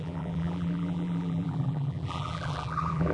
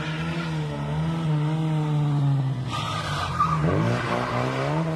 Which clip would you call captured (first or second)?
second